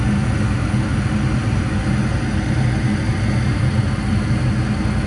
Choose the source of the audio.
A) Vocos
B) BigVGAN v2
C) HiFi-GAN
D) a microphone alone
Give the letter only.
D